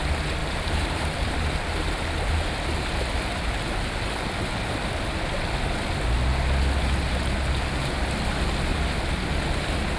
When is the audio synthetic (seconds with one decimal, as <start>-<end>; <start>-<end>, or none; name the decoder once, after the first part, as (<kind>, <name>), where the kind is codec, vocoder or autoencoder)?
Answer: 0.4-1.3 (vocoder, BigVGAN v2); 8.7-9.2